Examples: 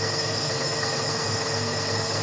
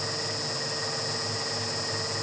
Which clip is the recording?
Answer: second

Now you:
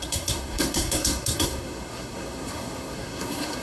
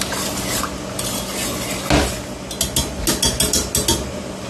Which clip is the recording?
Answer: second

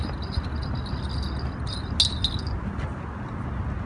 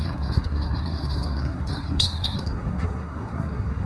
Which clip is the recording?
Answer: first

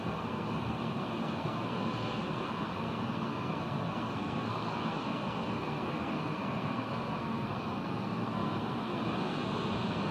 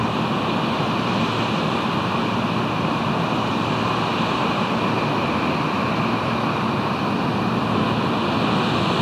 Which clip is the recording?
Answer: second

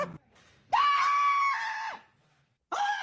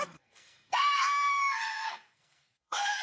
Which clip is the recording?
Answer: first